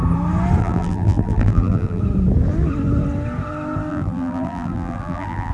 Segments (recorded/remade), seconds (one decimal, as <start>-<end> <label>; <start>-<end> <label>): 0.0-0.6 recorded; 0.6-2.0 remade; 2.0-3.9 recorded; 3.9-5.5 remade